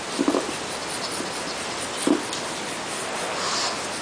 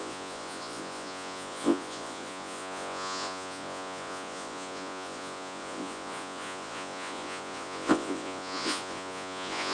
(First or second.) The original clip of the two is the first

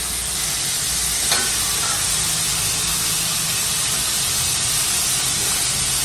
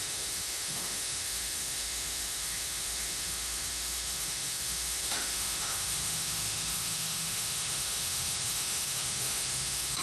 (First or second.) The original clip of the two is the first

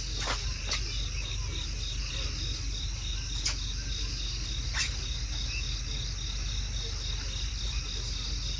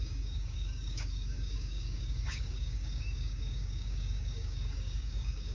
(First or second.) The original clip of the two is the first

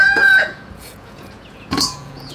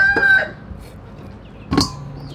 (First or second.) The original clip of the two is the second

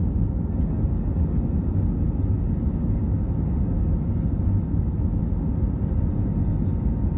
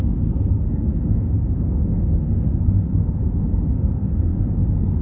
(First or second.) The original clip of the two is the first